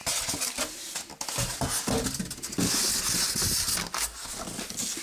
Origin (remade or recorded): recorded